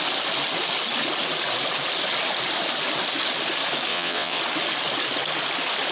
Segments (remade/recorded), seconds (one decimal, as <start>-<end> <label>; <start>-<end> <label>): 0.0-3.9 recorded; 3.9-4.4 remade; 4.4-5.9 recorded